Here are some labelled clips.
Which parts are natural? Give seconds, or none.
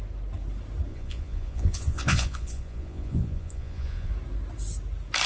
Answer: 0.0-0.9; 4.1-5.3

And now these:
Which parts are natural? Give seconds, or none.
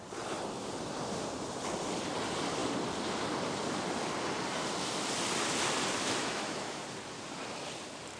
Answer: 0.0-6.2; 6.8-8.2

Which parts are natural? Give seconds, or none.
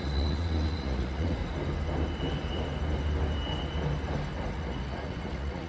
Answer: 1.4-4.5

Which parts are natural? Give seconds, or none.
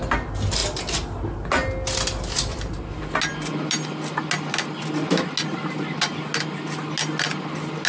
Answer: 0.0-7.9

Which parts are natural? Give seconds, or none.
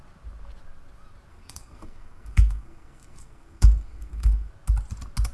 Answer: 0.0-1.3; 4.5-5.3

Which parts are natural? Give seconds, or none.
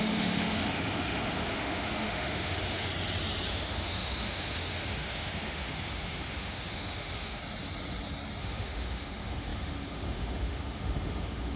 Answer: 2.9-3.5; 7.4-8.4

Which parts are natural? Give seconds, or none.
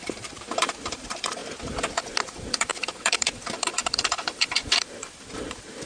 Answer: 1.4-2.2